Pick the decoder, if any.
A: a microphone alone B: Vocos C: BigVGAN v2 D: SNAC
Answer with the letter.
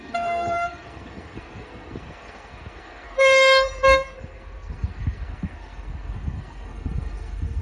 D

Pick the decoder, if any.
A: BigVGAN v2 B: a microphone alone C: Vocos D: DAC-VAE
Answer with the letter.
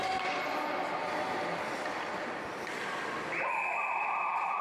B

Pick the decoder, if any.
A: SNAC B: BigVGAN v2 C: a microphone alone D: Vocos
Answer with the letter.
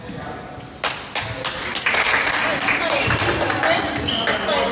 C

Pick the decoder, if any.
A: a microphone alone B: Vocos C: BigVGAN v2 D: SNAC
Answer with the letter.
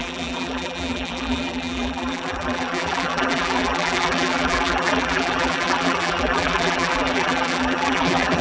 C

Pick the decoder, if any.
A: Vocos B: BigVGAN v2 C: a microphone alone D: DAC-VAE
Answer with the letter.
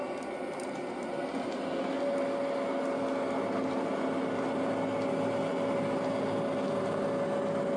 C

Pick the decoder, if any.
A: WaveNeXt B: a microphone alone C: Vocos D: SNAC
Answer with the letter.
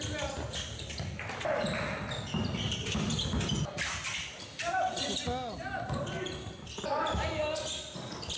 B